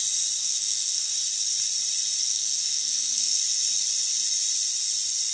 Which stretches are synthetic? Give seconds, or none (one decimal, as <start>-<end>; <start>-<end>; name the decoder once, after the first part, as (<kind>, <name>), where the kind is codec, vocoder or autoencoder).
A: 0.4-1.1 (codec, SNAC); 2.2-3.4